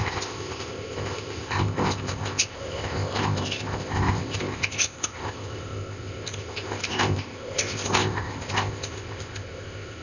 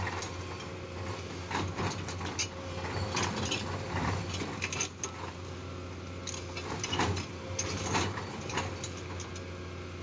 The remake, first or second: first